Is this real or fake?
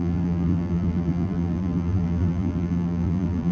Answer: fake